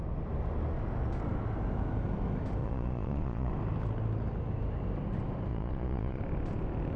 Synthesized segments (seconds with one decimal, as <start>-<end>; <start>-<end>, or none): 2.6-3.5; 5.5-6.2